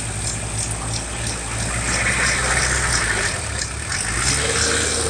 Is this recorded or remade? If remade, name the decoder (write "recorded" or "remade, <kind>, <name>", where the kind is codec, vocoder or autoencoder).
recorded